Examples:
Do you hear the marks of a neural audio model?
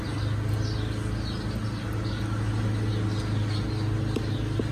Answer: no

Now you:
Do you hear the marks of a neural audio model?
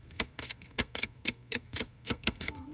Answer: yes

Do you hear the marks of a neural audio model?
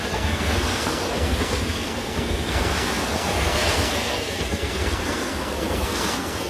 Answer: yes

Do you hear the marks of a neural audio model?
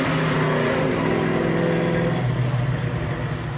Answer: no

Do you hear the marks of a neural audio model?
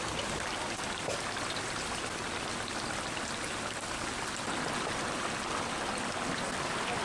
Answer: no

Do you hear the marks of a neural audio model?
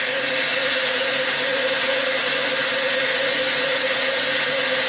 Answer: no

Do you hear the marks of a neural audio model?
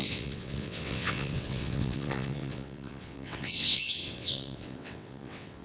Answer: yes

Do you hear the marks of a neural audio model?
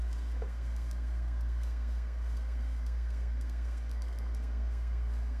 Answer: yes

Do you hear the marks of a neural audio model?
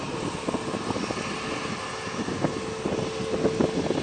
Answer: no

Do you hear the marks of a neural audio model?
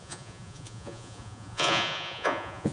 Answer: yes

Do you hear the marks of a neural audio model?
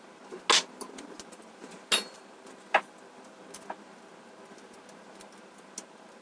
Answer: no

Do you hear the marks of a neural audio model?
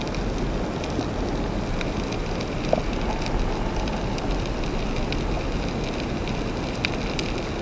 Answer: no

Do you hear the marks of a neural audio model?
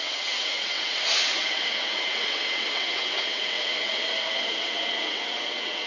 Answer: yes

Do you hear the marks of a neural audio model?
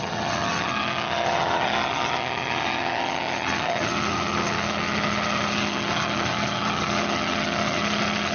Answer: yes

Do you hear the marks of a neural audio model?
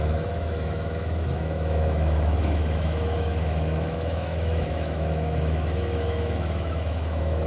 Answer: yes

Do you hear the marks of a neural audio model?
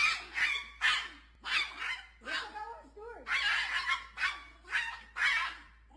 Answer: no